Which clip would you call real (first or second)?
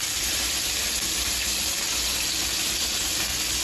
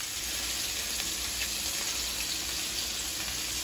second